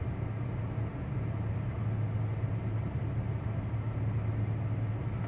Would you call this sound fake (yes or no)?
no